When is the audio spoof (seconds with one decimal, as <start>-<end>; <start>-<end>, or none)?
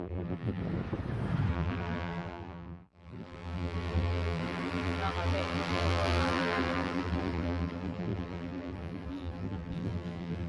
0.0-0.6; 1.5-10.5